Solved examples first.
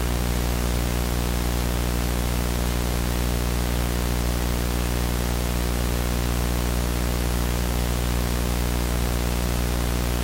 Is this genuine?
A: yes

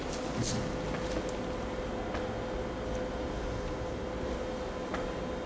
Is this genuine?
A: yes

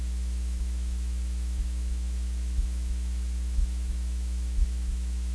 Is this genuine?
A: no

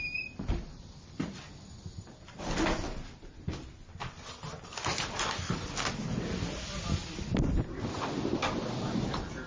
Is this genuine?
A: no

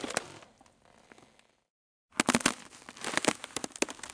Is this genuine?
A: yes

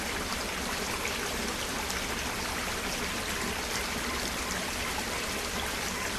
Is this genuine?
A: yes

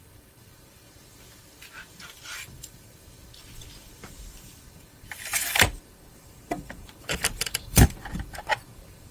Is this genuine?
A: no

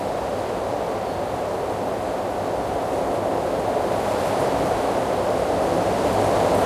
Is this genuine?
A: yes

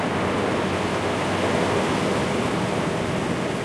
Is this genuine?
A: yes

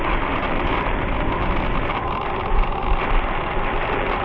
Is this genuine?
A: yes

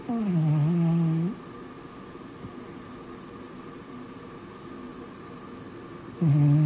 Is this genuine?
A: yes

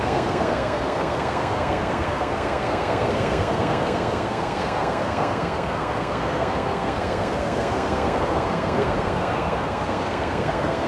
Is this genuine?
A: no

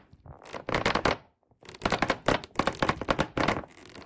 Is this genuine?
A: yes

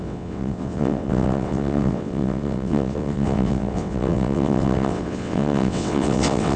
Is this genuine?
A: no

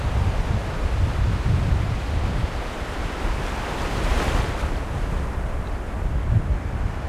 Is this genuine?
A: yes